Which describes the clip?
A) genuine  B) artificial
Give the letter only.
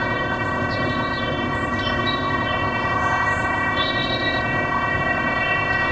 B